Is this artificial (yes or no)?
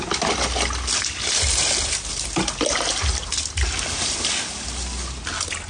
no